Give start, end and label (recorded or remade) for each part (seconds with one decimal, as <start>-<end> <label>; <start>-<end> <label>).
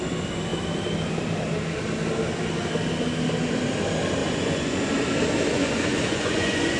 0.0-4.2 recorded; 4.2-4.8 remade; 4.8-5.5 recorded; 5.5-6.8 remade